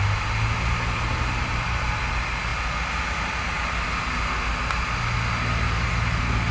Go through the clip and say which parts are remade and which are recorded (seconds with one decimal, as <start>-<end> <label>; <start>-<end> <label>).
0.0-1.1 recorded; 1.1-2.0 remade; 2.0-6.5 recorded